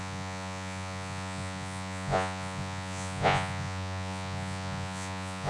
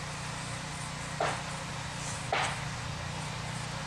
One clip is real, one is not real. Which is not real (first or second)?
first